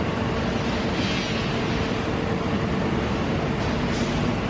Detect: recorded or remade recorded